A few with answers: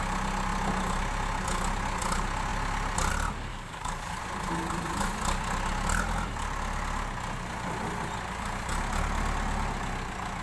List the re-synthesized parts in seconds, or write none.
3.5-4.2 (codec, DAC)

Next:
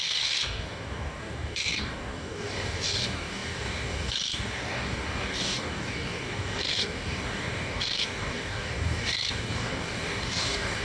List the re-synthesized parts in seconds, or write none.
0.0-10.8 (codec, DAC)

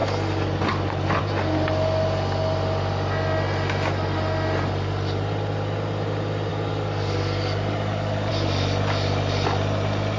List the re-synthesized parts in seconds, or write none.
6.5-8.3 (codec, DAC)

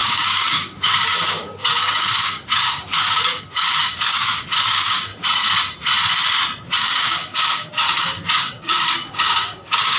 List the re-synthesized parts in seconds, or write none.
0.0-5.1 (codec, DAC); 6.8-10.0

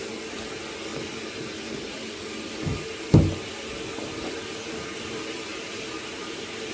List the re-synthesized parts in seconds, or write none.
none